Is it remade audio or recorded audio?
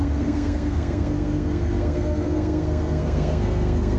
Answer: remade